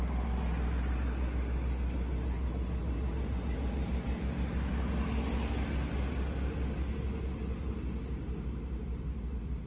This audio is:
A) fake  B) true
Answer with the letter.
B